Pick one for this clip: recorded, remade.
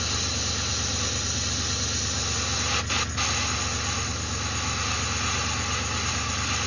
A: recorded